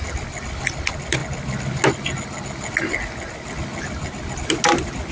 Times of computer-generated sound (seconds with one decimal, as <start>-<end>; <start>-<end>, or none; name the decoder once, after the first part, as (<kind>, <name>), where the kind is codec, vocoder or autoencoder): none